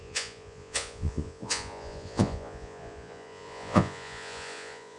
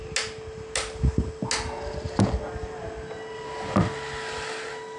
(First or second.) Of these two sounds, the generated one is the first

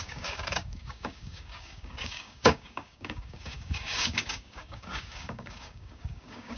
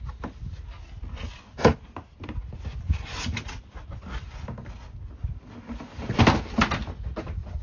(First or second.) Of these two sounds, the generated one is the first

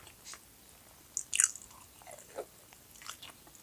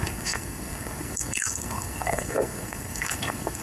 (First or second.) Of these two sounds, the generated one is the second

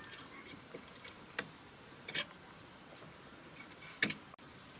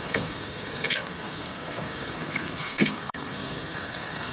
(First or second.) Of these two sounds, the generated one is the second